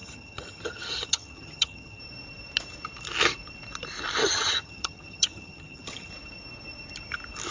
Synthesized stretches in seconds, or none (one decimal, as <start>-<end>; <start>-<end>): 0.0-2.0; 4.2-6.1